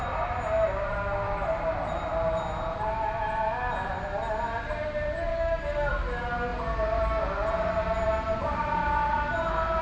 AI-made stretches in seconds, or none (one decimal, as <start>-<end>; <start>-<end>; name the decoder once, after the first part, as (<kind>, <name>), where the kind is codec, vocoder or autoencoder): 5.3-5.9 (codec, DAC)